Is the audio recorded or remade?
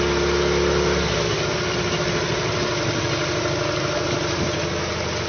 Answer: recorded